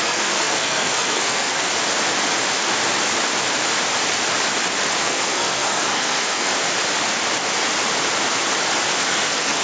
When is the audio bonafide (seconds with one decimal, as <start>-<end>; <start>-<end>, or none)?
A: 1.7-5.0; 6.5-9.1